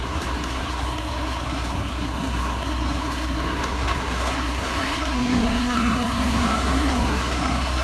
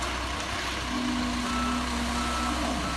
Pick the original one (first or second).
second